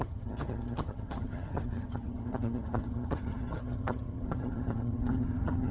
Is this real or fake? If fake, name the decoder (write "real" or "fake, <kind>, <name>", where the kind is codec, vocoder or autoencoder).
fake, vocoder, HiFi-GAN